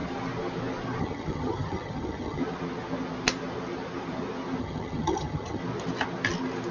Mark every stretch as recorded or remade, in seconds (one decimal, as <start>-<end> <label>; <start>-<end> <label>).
0.0-1.0 recorded; 1.0-2.4 remade; 2.4-4.6 recorded; 4.6-5.6 remade; 5.6-6.7 recorded